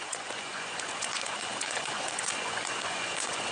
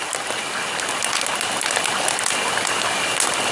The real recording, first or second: second